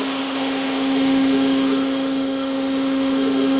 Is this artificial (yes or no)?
yes